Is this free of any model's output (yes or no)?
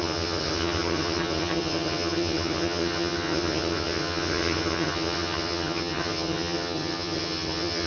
no